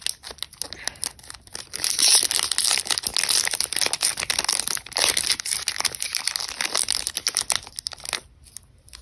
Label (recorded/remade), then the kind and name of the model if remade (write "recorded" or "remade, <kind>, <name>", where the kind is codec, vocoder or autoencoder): recorded